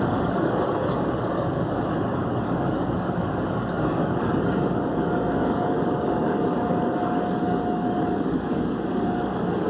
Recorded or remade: remade